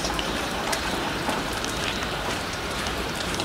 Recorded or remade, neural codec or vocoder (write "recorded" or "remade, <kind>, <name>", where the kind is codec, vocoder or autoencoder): remade, vocoder, BigVGAN v2